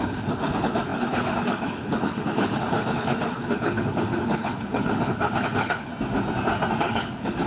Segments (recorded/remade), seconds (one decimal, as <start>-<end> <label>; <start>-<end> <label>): 0.0-5.9 remade; 5.9-6.8 recorded; 6.8-7.5 remade